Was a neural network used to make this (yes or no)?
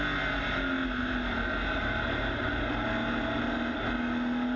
no